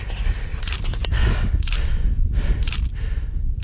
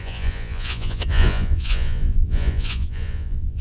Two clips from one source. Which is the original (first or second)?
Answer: first